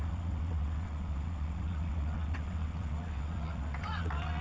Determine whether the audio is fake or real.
fake